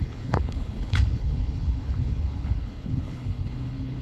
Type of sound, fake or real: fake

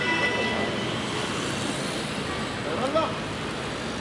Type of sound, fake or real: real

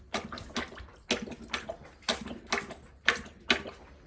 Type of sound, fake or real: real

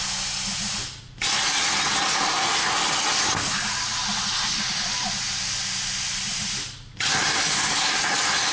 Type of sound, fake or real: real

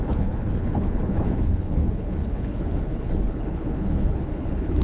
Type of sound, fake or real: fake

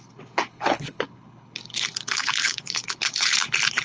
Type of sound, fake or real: fake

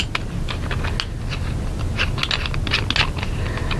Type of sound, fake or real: real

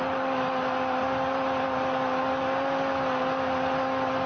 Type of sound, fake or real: real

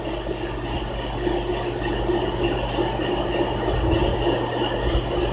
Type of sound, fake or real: real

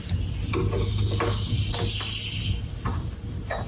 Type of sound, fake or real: real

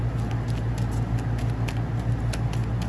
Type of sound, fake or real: real